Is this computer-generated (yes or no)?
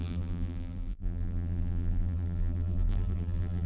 yes